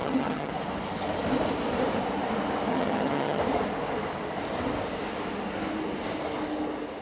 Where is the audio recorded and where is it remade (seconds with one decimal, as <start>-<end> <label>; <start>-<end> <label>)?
0.0-0.5 remade; 0.5-2.7 recorded; 2.7-3.4 remade; 3.4-7.0 recorded